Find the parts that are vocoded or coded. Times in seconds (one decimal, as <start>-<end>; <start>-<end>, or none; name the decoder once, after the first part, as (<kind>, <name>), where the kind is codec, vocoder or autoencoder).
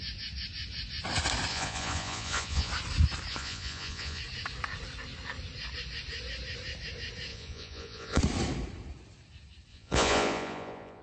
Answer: 1.5-2.7 (vocoder, Vocos); 3.3-4.2; 7.3-8.2; 9.7-11.0